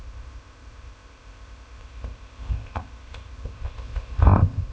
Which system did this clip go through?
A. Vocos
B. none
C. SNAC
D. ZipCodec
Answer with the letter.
D